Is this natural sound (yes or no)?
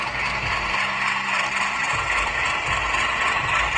yes